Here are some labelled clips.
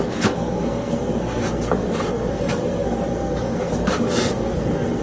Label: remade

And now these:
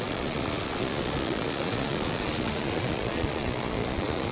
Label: remade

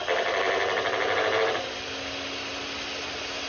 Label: recorded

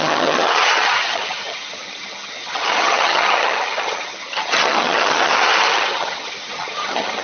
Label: remade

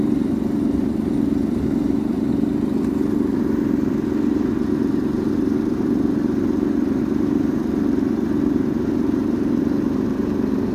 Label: remade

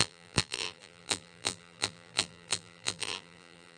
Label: remade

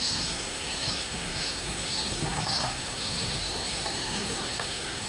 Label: remade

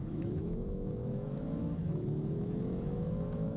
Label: remade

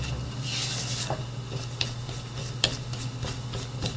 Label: recorded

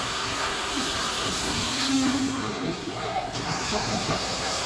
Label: remade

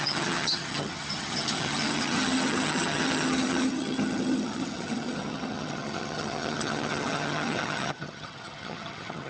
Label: remade